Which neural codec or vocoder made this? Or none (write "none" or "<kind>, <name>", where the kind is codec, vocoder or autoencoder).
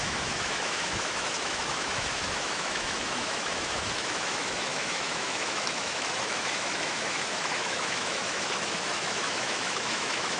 autoencoder, DAC-VAE